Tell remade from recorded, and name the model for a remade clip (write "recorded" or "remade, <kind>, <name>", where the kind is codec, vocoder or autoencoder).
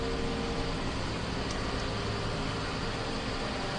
recorded